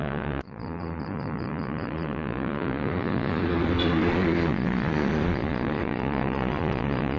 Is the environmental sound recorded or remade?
remade